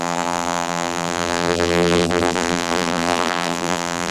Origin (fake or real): fake